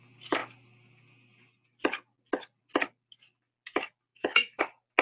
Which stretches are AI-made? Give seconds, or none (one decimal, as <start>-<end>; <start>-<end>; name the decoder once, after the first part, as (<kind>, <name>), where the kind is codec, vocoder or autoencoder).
4.1-4.6 (autoencoder, DAC-VAE)